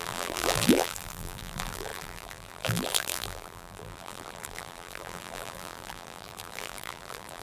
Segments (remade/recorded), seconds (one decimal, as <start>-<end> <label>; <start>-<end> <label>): 0.0-7.4 remade